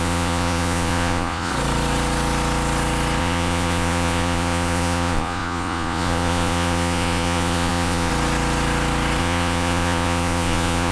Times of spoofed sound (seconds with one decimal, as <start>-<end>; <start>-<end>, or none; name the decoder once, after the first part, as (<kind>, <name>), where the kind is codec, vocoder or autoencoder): 0.0-1.5 (vocoder, Vocos); 3.2-8.1; 9.2-10.9